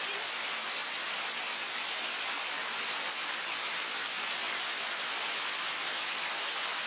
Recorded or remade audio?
recorded